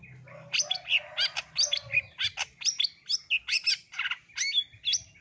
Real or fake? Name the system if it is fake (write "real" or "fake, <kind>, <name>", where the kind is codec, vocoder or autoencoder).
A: real